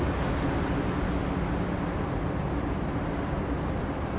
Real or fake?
real